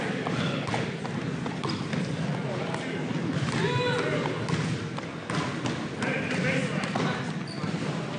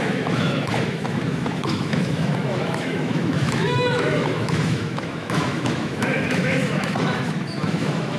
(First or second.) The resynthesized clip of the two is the second